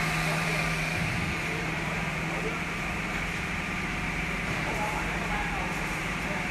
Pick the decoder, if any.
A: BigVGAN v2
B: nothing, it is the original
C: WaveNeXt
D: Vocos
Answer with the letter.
A